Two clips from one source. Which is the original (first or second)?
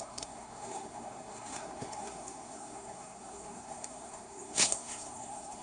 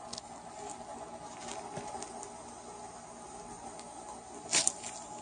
second